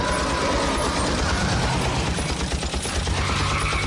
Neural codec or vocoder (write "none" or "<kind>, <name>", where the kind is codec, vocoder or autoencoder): none